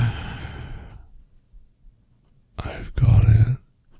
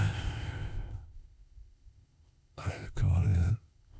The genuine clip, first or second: first